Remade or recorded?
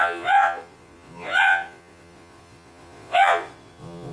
remade